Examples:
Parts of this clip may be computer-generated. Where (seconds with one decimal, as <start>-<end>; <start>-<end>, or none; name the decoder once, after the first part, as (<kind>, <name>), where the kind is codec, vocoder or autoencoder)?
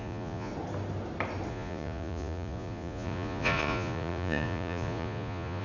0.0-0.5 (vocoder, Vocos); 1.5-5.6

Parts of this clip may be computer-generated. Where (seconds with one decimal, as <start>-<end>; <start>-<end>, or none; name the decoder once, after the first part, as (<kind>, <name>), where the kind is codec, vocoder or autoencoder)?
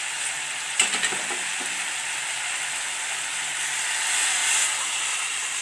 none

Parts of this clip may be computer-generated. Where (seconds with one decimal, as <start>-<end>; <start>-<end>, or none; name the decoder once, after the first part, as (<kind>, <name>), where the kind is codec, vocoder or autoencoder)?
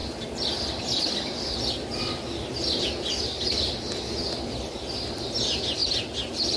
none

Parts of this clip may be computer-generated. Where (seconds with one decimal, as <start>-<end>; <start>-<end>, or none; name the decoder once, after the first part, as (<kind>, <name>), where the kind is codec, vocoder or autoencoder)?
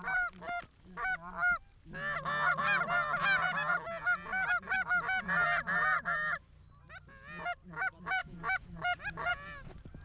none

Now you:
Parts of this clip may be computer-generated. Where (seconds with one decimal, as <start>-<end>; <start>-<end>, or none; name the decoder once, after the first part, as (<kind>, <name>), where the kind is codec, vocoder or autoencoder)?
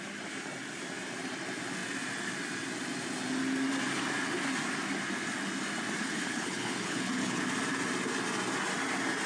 6.0-7.4 (codec, HILCodec)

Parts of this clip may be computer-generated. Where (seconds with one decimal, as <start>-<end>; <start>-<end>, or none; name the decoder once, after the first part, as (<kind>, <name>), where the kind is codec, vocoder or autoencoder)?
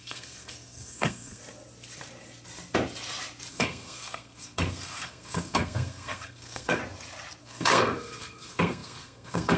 0.0-1.4 (codec, SNAC); 3.5-6.8; 7.4-9.6